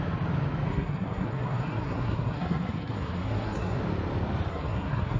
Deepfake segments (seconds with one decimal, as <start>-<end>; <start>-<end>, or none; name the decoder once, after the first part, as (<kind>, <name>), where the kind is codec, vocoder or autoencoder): 0.7-3.8 (codec, SNAC); 4.5-5.2